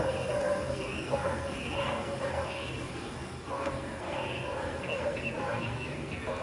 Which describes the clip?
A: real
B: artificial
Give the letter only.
B